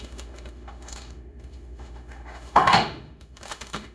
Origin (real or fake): fake